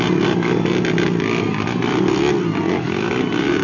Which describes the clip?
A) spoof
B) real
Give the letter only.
B